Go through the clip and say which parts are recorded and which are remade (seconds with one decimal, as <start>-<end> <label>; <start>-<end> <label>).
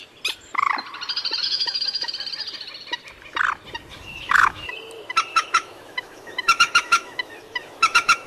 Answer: 0.0-1.4 recorded; 1.4-2.1 remade; 2.1-3.9 recorded; 3.9-4.7 remade; 4.7-5.3 recorded; 5.3-8.3 remade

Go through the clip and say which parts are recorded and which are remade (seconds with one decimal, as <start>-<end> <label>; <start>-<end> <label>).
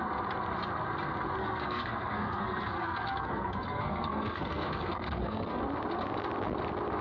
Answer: 0.0-1.4 recorded; 1.4-5.6 remade; 5.6-7.0 recorded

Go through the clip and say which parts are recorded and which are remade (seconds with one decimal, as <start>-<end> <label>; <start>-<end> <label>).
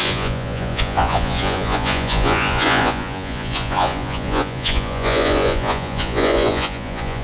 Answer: 0.0-7.2 remade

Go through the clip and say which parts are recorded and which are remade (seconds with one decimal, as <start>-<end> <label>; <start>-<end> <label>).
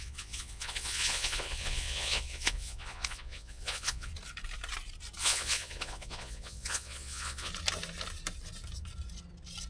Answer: 0.0-4.1 remade; 4.1-5.2 recorded; 5.2-7.5 remade; 7.5-9.7 recorded